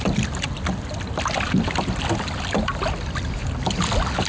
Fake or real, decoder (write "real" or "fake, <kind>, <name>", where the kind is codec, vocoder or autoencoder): real